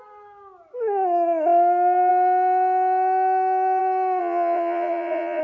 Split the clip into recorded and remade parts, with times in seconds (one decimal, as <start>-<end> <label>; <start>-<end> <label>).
0.0-4.2 recorded; 4.2-5.4 remade